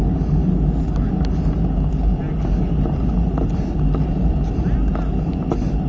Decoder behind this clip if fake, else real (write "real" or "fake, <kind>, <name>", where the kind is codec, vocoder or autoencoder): real